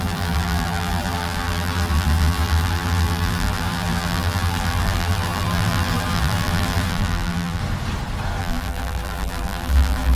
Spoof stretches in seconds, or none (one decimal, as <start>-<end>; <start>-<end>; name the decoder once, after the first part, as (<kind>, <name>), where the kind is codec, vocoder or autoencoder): 0.0-7.6 (vocoder, BigVGAN v2); 8.4-10.2